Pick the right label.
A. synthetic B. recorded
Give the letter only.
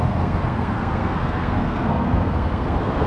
A